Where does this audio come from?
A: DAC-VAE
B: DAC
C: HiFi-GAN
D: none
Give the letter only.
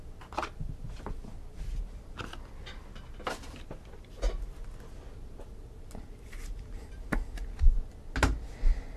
D